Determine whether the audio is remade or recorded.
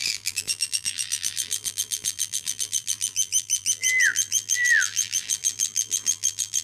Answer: remade